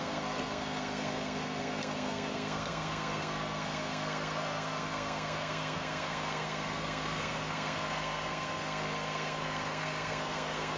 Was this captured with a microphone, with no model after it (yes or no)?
no